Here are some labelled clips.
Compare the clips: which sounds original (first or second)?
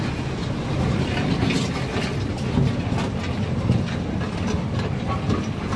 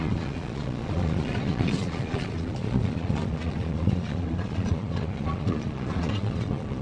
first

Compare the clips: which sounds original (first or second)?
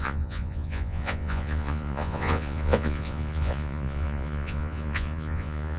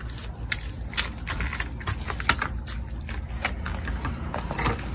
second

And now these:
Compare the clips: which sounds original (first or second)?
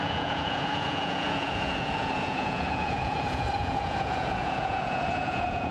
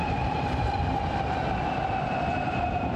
second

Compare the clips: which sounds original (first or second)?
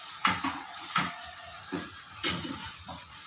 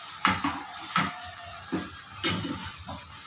second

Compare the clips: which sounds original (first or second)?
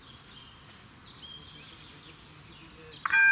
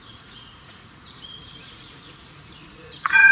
first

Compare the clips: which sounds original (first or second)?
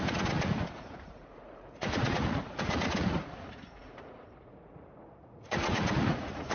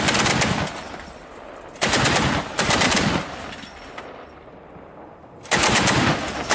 second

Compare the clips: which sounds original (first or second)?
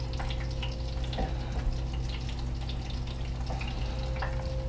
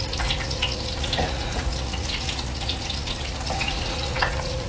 first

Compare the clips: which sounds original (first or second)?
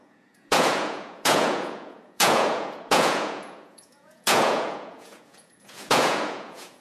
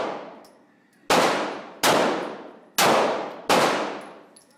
second